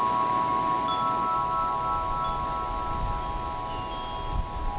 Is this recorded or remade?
recorded